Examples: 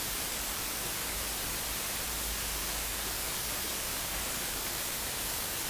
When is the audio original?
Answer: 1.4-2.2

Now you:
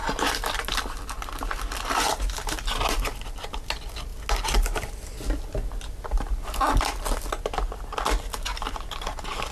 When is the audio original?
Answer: 0.0-9.5

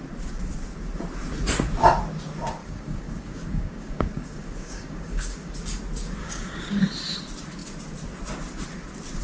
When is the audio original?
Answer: 0.0-2.6; 5.5-6.2; 6.8-9.2

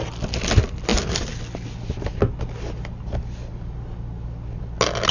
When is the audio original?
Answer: 0.0-5.1